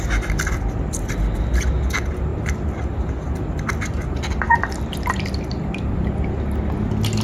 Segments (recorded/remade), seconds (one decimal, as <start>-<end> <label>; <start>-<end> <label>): 0.0-7.2 recorded